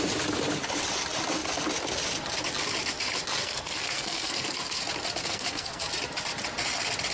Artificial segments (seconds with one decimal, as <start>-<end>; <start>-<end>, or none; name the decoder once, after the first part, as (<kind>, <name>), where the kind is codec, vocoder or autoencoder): 3.4-4.8 (codec, SNAC); 5.2-5.8